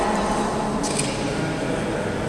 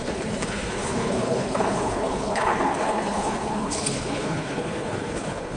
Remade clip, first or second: second